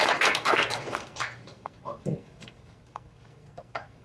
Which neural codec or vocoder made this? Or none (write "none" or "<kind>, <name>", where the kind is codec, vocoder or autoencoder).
codec, SNAC